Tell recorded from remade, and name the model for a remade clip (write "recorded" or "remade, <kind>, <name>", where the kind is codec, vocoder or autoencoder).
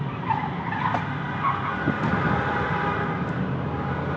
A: recorded